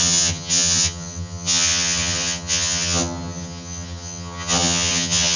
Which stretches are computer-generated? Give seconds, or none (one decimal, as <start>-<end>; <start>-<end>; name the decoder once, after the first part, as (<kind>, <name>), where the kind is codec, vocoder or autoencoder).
0.0-5.4 (vocoder, HiFi-GAN)